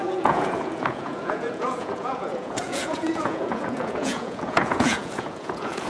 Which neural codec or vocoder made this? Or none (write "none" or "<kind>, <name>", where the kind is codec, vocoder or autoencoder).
vocoder, Vocos